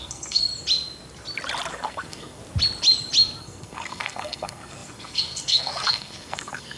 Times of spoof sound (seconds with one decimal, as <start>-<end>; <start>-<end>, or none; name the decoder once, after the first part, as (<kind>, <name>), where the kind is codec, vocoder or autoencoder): 0.0-0.5 (codec, SNAC); 1.7-2.4; 3.4-6.8